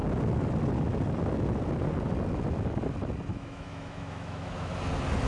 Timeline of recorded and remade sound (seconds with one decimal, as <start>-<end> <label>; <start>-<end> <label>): 0.0-3.3 recorded; 3.3-4.7 remade; 4.7-5.3 recorded